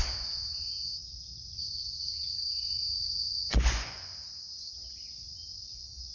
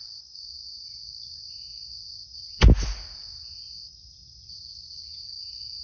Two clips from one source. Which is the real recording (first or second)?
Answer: second